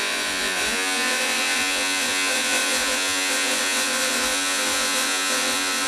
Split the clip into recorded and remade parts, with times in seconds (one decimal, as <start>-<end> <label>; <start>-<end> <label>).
0.0-5.9 remade